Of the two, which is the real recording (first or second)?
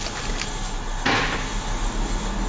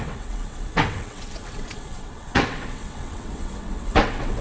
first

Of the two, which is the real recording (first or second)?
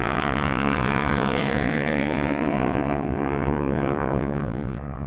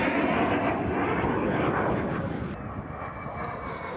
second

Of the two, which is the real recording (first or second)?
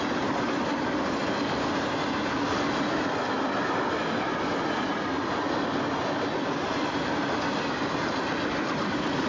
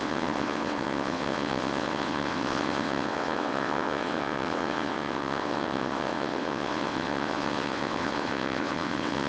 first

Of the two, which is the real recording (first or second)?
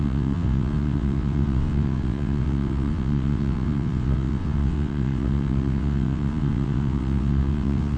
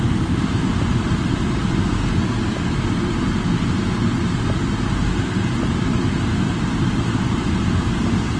second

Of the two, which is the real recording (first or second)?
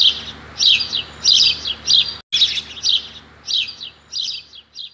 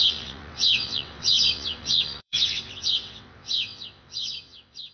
first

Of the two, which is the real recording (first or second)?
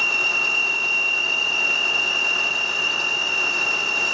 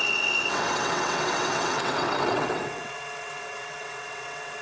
first